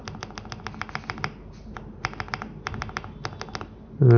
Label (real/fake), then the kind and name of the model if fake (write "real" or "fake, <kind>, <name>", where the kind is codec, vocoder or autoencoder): real